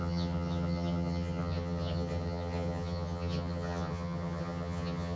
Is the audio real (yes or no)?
no